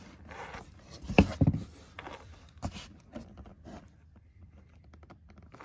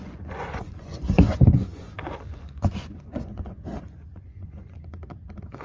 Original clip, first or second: first